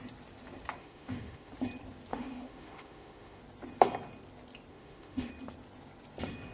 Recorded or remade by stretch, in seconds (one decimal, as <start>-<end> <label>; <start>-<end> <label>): 0.0-0.8 recorded; 0.8-1.5 remade; 1.5-2.1 recorded; 2.1-3.4 remade; 3.4-4.7 recorded; 4.7-5.3 remade; 5.3-6.5 recorded